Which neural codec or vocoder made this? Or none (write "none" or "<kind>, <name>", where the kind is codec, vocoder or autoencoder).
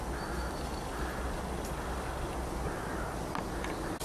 none